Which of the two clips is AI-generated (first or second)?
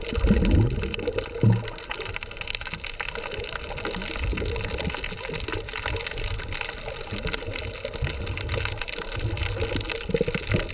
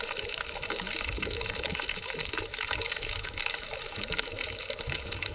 second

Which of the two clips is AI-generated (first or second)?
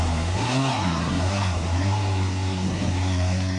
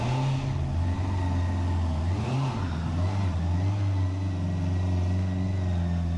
first